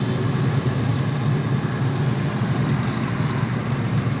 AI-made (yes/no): no